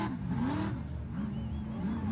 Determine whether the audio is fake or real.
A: real